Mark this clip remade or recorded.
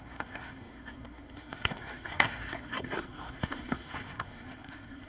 remade